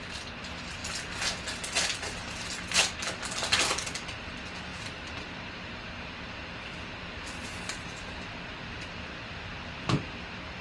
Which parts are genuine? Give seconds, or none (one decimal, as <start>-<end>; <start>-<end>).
0.0-10.6